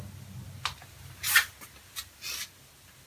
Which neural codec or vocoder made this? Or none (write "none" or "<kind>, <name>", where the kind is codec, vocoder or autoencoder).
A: none